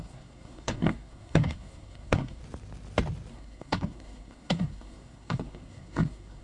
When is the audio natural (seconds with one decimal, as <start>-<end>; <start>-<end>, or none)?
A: 2.4-3.3